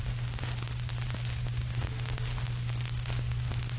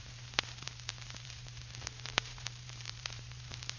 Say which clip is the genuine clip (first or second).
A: first